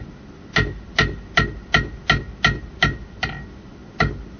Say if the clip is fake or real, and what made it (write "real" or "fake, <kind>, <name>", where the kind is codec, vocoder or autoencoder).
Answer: real